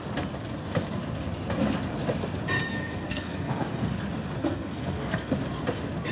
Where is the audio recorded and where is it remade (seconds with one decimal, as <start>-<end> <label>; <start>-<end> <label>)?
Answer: 0.0-2.7 recorded; 2.7-3.9 remade; 3.9-4.4 recorded; 4.4-5.3 remade; 5.3-6.1 recorded

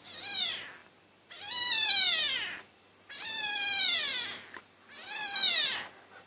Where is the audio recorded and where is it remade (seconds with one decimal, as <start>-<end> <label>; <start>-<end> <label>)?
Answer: 0.0-6.3 recorded

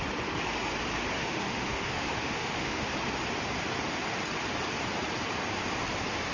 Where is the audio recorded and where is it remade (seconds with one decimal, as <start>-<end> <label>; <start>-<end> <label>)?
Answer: 0.0-1.2 recorded; 1.2-2.9 remade; 2.9-6.3 recorded

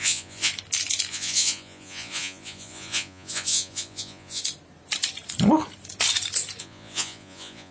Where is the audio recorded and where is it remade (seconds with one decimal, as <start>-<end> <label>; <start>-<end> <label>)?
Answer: 0.0-0.5 remade; 0.5-1.1 recorded; 1.1-4.4 remade; 4.4-6.6 recorded; 6.6-7.7 remade